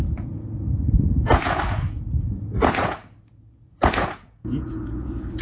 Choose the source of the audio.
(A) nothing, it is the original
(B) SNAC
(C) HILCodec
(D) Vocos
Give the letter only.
D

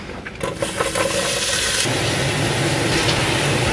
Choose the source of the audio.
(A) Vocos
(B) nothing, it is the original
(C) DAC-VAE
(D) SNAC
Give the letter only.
B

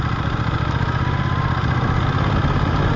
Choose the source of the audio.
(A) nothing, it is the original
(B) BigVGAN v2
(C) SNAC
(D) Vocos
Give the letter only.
A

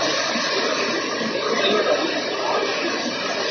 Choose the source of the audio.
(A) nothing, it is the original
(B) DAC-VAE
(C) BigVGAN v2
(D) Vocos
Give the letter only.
A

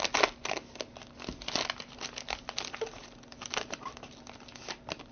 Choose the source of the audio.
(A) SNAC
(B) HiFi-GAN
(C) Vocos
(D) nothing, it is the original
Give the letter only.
D